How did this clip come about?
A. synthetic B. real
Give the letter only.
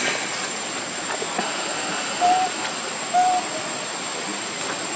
B